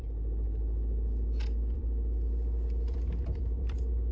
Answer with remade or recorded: remade